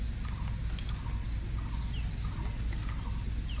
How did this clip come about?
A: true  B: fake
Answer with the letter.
A